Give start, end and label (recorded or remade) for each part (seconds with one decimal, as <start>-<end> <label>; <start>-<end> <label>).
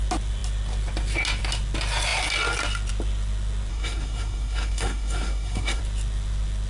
0.0-3.7 recorded; 3.7-5.8 remade; 5.8-6.7 recorded